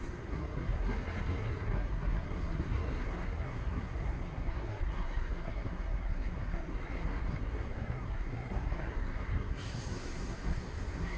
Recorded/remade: remade